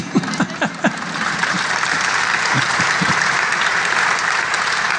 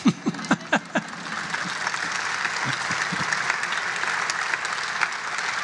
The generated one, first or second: first